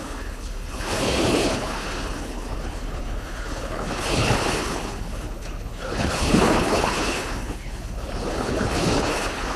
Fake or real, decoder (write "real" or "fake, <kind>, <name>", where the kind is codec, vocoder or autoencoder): fake, codec, HILCodec